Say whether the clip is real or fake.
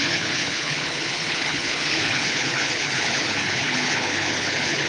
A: fake